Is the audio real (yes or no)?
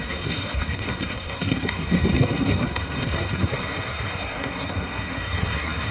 no